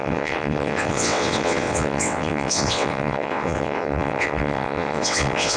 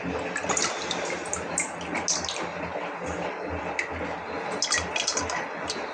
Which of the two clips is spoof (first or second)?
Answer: first